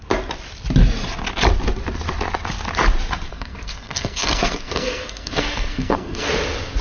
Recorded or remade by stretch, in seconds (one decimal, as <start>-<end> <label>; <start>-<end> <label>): 0.0-3.3 recorded; 3.3-6.3 remade; 6.3-6.8 recorded